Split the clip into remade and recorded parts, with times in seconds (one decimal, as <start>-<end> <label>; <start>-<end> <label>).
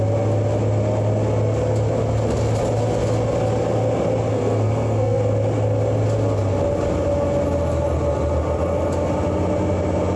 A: 0.0-4.3 recorded; 4.3-5.2 remade; 5.2-10.2 recorded